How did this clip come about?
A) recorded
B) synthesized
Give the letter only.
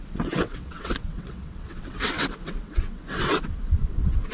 B